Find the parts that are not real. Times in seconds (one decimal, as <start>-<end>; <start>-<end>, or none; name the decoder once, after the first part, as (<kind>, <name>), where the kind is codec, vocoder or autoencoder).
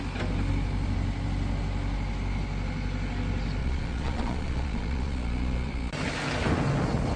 3.6-5.9 (vocoder, Vocos)